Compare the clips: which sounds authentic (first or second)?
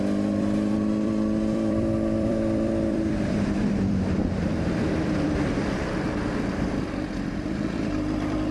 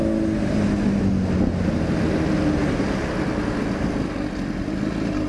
second